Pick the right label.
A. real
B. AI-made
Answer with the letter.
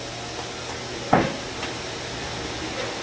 A